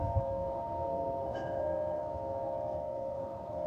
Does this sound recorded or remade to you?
remade